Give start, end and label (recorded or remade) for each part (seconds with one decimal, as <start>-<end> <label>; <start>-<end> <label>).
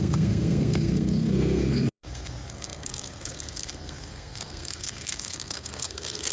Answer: 0.0-6.3 remade